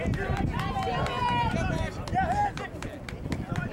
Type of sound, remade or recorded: recorded